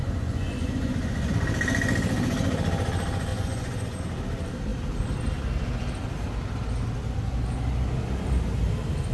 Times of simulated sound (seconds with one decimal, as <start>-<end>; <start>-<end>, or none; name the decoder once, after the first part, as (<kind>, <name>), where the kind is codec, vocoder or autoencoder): 0.0-1.3 (vocoder, Vocos); 3.3-4.0